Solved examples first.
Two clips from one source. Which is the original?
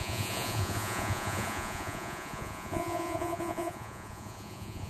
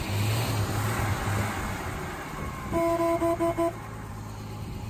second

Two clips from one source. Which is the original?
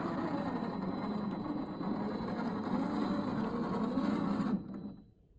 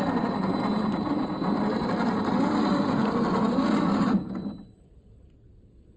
first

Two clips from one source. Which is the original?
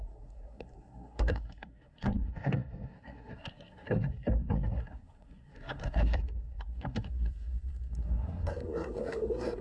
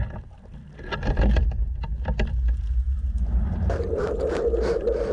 second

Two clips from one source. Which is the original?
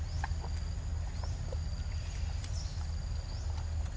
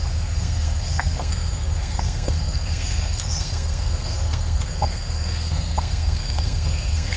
first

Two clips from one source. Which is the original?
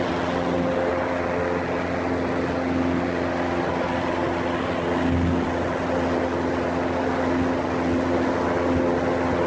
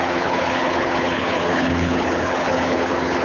first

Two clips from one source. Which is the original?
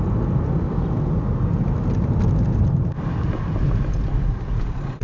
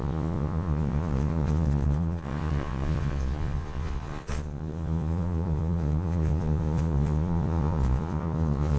first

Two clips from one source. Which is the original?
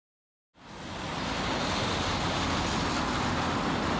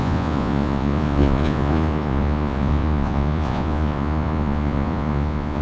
first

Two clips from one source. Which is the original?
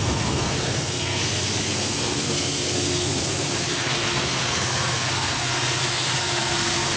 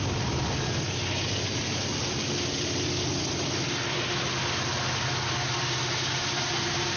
second